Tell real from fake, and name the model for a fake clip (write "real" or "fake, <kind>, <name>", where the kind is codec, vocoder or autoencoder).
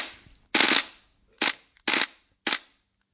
real